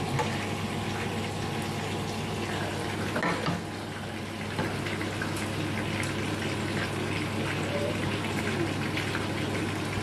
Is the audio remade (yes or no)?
no